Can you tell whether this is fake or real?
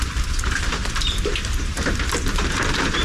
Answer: fake